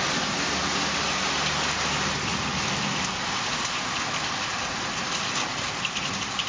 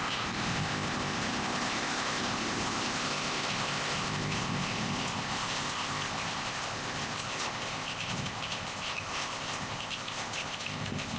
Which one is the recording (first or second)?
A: first